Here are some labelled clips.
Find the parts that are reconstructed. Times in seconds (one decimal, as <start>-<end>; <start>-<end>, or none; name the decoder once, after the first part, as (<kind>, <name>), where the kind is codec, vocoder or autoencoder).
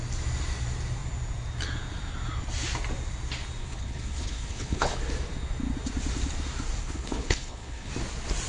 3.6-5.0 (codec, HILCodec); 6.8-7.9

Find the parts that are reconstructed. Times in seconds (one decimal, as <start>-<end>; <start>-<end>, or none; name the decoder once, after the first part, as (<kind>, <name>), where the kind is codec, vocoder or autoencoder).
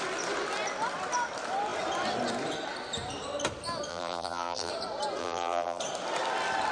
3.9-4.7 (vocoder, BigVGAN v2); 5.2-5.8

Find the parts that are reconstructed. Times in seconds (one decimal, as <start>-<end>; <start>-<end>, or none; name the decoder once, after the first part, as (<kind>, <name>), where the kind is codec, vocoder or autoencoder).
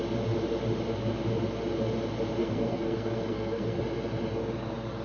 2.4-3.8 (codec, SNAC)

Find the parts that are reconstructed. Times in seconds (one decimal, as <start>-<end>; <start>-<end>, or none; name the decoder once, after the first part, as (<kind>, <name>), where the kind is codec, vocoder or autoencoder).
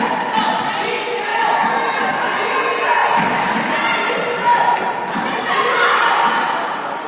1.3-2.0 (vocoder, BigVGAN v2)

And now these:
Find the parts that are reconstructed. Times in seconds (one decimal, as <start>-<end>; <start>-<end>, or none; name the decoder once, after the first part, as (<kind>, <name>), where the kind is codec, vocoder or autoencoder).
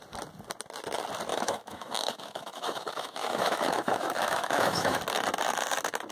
1.3-5.0 (autoencoder, DAC-VAE)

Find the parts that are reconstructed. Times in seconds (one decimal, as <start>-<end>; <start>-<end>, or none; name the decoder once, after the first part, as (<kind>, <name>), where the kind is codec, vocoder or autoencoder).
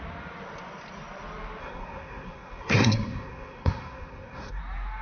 1.6-4.6 (codec, SNAC)